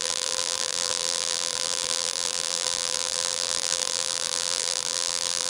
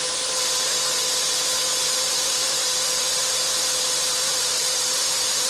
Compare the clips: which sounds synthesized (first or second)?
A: first